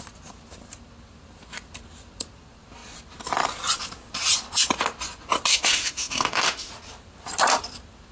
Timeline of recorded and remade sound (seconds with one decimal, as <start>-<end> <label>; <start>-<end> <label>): 0.0-5.5 recorded; 5.5-6.7 remade; 6.7-8.1 recorded